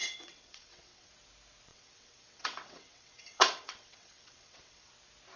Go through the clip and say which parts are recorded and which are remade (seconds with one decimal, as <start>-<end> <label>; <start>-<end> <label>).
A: 0.0-1.1 remade; 1.1-1.7 recorded; 1.7-4.9 remade; 4.9-5.4 recorded